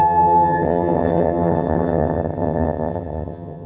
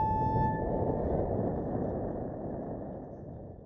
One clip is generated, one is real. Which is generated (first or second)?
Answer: first